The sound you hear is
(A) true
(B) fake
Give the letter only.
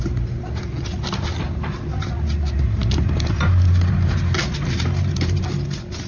A